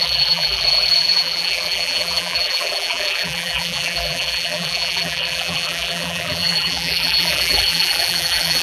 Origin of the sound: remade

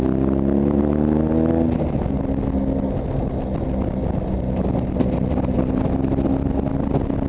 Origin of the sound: recorded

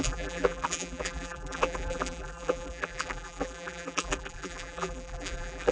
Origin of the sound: remade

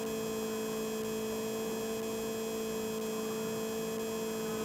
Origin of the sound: recorded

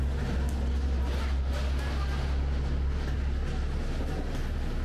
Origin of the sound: recorded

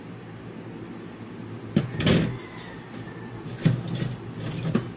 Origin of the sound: recorded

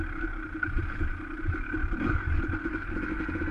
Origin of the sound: recorded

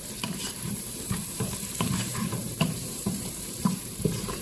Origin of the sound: remade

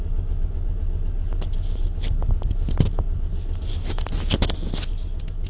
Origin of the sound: recorded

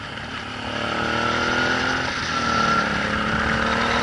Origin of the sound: recorded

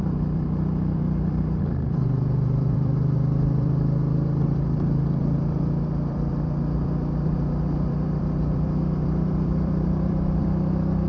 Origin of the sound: remade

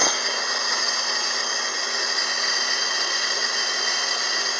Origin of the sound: recorded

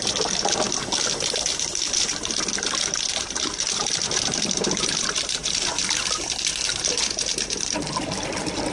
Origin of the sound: remade